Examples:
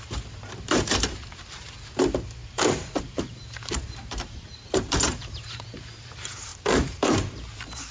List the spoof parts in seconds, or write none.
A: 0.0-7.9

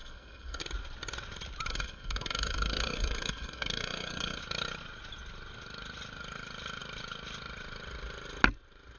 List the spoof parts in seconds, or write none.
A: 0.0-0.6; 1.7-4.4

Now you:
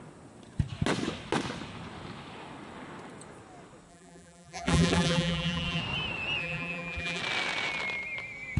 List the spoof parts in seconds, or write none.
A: 3.9-5.8; 6.4-7.2